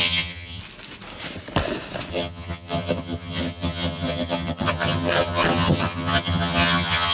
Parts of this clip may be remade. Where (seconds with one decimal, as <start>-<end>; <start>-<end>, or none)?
0.0-0.6; 2.1-7.1